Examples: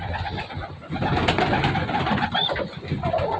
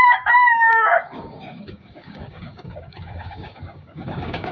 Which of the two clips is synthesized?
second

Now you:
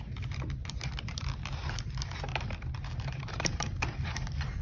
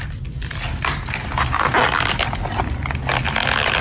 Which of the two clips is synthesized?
first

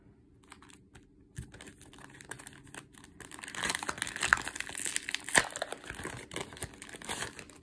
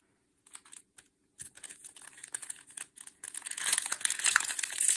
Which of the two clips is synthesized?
second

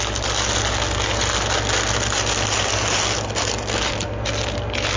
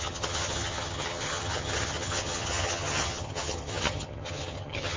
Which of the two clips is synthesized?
second